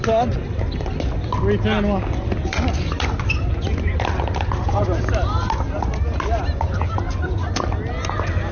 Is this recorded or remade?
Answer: recorded